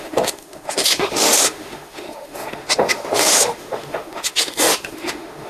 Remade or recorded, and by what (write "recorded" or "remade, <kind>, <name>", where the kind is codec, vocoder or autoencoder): remade, autoencoder, DAC-VAE